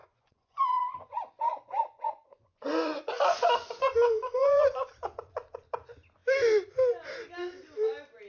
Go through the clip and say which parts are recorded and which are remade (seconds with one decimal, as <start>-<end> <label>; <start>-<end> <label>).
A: 0.0-4.9 remade; 4.9-8.3 recorded